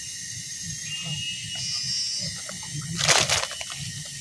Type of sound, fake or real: real